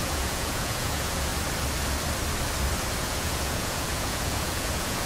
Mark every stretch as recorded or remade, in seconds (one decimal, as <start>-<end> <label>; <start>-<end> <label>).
0.0-1.3 remade; 1.3-3.0 recorded; 3.0-5.1 remade